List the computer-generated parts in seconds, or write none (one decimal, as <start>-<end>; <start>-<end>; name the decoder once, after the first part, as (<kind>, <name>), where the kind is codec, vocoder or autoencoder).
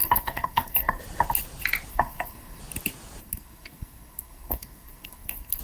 0.0-1.0 (codec, SNAC); 1.9-2.6; 3.2-5.6